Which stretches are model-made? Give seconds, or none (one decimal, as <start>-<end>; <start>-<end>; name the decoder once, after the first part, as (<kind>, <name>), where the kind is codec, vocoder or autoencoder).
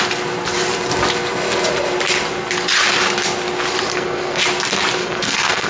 3.9-4.4 (codec, SNAC); 5.0-5.7